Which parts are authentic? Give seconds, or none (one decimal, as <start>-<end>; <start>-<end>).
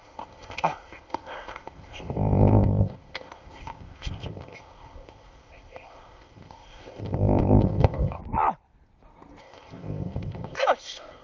8.2-9.4